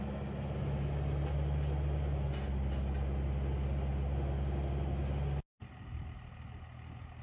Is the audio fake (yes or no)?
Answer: no